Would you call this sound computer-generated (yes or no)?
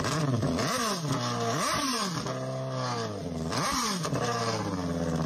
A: no